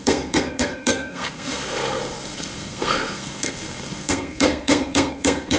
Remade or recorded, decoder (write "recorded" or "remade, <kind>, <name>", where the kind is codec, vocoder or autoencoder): remade, codec, SNAC